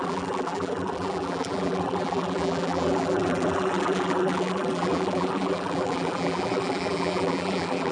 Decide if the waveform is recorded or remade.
remade